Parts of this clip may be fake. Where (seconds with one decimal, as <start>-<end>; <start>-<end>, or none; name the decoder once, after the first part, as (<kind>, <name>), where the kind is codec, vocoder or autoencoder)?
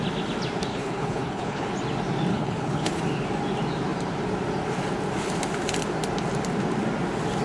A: 0.7-1.7 (codec, HILCodec); 2.3-3.0